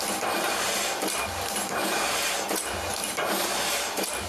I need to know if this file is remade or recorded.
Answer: remade